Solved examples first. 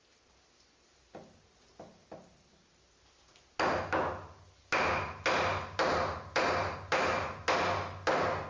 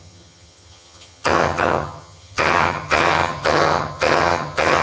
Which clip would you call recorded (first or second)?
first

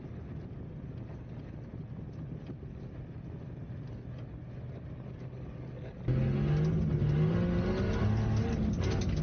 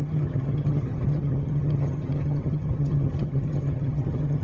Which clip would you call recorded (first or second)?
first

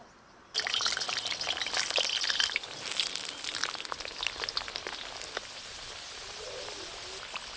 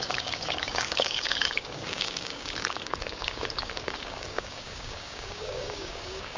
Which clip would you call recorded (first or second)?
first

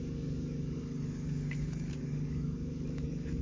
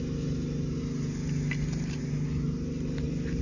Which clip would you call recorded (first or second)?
second